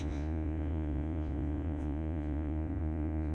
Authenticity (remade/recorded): remade